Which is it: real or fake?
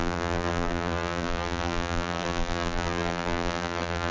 fake